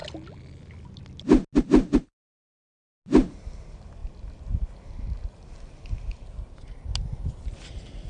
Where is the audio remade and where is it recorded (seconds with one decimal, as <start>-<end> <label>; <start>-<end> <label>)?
0.0-8.1 recorded